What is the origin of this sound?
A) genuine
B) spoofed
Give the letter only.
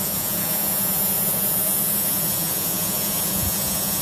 B